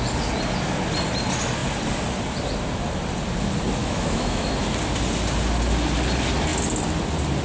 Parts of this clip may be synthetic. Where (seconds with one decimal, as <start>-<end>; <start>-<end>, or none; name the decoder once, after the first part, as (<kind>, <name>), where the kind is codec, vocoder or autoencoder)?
3.8-4.5 (autoencoder, DAC-VAE)